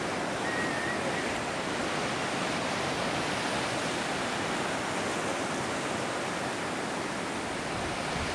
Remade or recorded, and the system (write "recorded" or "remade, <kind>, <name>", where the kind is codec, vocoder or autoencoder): recorded